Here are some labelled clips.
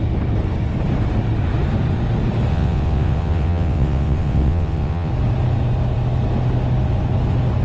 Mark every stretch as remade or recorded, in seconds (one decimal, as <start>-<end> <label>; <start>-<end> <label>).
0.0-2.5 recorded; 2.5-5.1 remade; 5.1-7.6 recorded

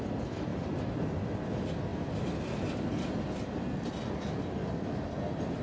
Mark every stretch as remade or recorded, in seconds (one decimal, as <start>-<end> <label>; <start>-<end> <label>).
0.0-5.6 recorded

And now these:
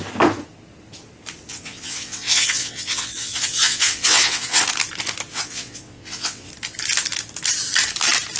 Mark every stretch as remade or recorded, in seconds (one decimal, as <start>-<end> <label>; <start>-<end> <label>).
0.0-1.5 recorded; 1.5-4.6 remade; 4.6-5.3 recorded; 5.3-6.5 remade; 6.5-8.4 recorded